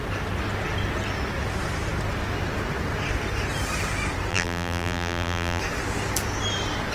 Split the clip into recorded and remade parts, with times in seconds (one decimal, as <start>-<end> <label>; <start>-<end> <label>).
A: 0.0-4.3 recorded; 4.3-5.6 remade; 5.6-6.9 recorded